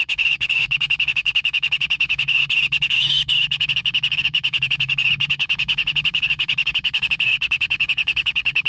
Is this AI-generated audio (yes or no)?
yes